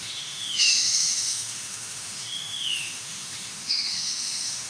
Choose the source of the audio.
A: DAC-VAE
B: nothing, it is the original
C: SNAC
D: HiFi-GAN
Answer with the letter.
A